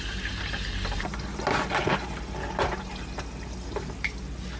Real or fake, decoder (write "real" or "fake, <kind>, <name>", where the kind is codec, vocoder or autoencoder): real